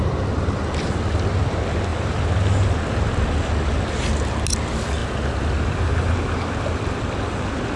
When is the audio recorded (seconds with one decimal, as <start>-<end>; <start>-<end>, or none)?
0.0-7.8